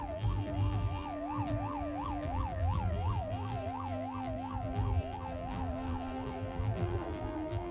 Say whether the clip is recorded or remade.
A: remade